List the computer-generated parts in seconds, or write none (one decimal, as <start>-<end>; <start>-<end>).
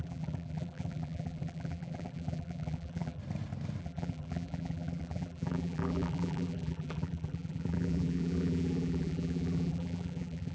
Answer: 0.0-3.2; 3.8-10.5